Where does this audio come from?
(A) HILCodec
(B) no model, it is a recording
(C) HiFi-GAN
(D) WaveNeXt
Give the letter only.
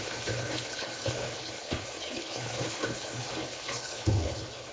A